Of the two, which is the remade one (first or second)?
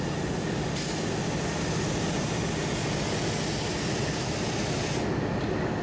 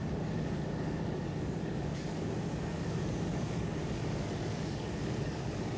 second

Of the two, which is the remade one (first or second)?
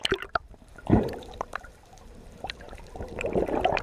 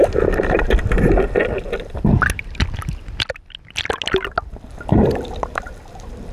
first